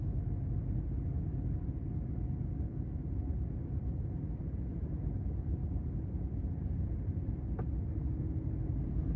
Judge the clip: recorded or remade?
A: recorded